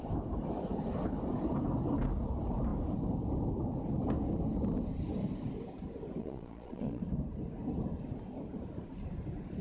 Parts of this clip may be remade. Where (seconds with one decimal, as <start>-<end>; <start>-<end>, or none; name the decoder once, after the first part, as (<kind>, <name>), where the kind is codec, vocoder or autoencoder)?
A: 6.2-7.0 (vocoder, Vocos)